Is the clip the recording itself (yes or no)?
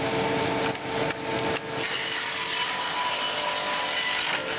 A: yes